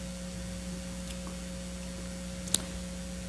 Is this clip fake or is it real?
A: real